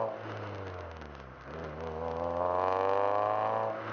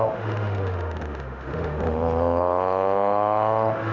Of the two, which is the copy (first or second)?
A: second